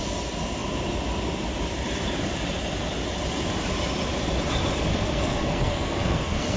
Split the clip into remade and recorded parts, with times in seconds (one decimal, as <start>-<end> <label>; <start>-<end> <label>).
0.0-4.9 recorded; 4.9-6.6 remade